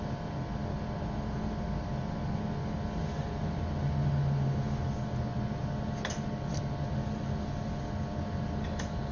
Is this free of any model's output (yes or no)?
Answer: yes